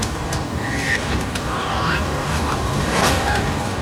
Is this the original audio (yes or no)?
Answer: no